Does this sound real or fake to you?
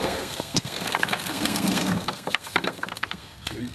fake